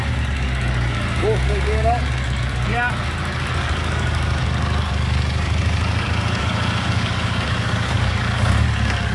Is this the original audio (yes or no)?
no